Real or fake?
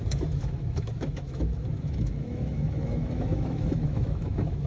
fake